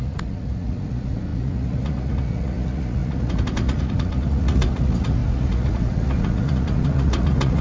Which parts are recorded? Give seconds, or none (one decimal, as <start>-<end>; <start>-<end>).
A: none